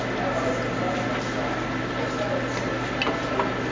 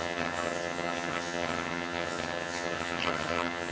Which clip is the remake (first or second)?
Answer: second